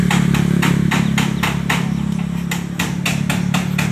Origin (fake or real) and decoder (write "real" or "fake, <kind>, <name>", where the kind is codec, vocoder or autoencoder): real